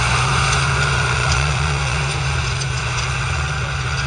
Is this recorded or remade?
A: remade